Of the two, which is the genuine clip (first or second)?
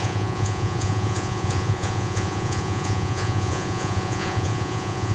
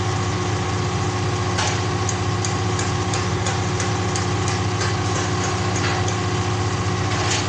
second